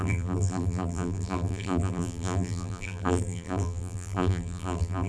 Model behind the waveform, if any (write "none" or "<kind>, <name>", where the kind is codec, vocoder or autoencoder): vocoder, BigVGAN v2